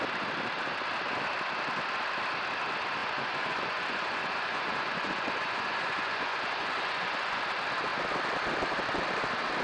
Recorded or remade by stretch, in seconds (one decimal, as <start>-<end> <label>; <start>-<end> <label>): 0.0-3.0 recorded; 3.0-7.4 remade; 7.4-9.6 recorded